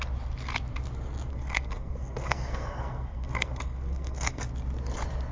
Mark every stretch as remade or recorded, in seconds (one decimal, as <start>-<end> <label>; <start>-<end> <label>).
0.0-1.3 recorded; 1.3-4.5 remade; 4.5-5.3 recorded